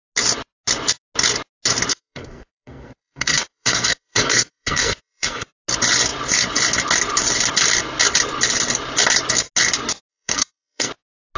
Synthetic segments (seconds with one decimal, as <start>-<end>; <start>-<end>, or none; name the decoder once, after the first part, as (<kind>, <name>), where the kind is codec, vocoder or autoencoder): 1.9-5.5 (codec, SNAC); 10.1-10.9